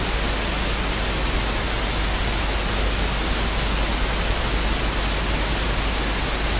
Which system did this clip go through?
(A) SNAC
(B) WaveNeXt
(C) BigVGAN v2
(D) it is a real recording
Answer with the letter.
D